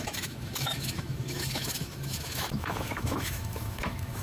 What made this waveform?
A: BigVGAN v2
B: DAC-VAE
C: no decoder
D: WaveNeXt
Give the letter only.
B